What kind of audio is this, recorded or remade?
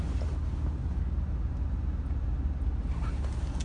recorded